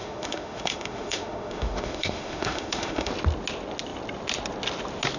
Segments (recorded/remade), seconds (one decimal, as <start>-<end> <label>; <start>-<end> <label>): 0.0-3.1 remade; 3.1-5.2 recorded

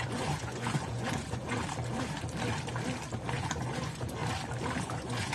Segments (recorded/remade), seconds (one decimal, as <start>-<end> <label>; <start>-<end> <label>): 0.0-1.6 remade; 1.6-3.3 recorded; 3.3-4.2 remade; 4.2-4.8 recorded; 4.8-5.3 remade

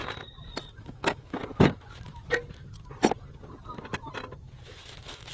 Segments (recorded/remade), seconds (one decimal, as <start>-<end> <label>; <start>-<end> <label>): 0.0-0.8 recorded; 0.8-1.4 remade; 1.4-4.6 recorded; 4.6-5.3 remade

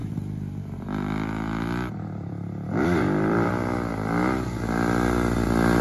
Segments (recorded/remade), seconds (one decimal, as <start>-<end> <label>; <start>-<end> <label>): 0.0-3.5 remade; 3.5-5.8 recorded